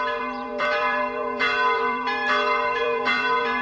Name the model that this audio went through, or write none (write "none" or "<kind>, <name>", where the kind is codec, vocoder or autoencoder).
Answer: vocoder, BigVGAN v2